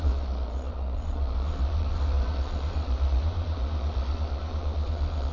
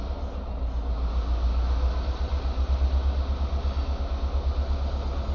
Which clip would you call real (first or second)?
second